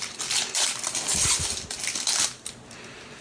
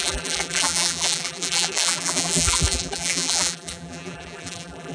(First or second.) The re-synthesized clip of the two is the second